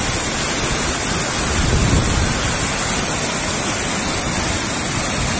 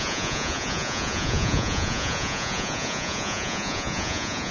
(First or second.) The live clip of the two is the first